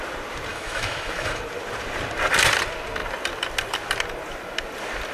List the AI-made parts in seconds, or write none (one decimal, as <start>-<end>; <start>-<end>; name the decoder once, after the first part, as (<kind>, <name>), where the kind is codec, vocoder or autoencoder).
0.5-1.4 (autoencoder, DAC-VAE)